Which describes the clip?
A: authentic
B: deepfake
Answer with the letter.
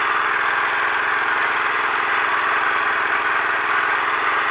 A